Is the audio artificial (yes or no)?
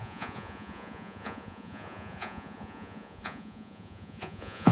yes